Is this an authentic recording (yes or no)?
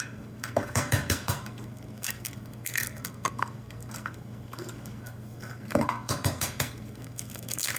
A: no